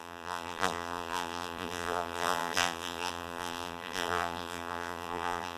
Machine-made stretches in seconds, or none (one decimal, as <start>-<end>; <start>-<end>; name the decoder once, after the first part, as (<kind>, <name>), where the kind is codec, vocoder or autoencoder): 0.0-5.6 (vocoder, BigVGAN v2)